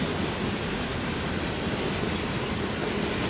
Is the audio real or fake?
real